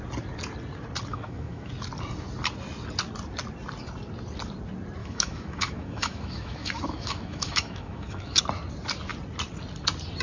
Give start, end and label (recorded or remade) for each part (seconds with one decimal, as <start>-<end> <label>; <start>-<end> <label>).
0.0-1.1 recorded; 1.1-1.7 remade; 1.7-5.0 recorded; 5.0-8.4 remade; 8.4-10.2 recorded